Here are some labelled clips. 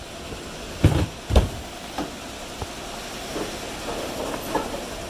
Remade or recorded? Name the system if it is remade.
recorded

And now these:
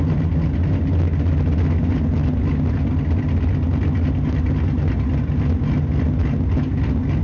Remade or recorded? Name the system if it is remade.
recorded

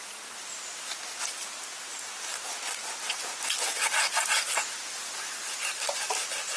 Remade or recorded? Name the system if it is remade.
recorded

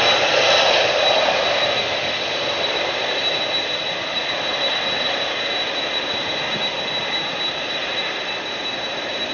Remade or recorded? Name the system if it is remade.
recorded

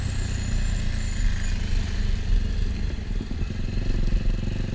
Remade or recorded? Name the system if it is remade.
recorded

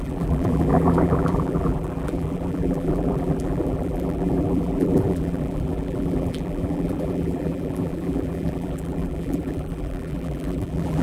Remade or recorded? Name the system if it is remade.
remade, vocoder, BigVGAN v2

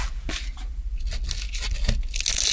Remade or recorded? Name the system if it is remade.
recorded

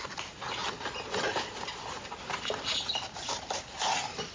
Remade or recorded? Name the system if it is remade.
recorded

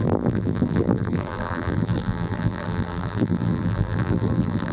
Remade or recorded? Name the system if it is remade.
remade, vocoder, BigVGAN v2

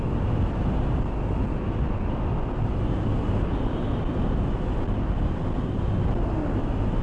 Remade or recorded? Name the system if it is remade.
recorded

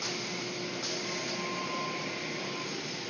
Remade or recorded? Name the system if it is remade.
recorded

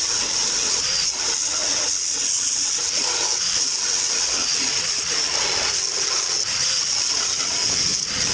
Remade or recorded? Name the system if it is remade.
recorded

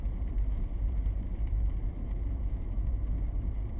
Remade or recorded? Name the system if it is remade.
remade, vocoder, BigVGAN v2